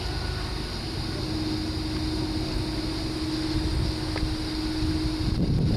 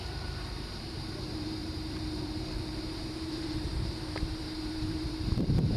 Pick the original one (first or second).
first